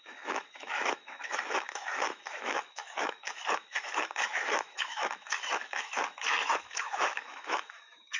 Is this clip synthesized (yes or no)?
yes